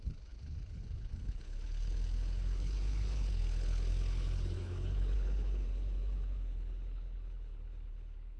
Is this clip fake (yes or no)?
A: yes